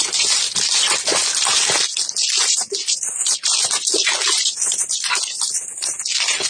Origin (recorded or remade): recorded